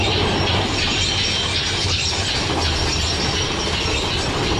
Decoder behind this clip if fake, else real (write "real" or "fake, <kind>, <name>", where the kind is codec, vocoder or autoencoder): real